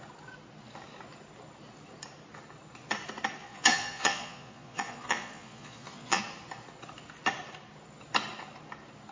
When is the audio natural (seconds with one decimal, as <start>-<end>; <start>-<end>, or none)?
0.0-3.4; 6.2-9.1